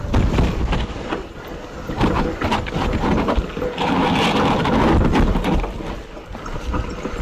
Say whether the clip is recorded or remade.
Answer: recorded